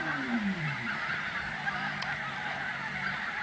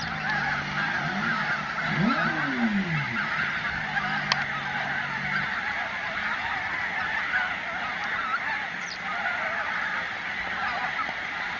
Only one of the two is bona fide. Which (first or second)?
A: second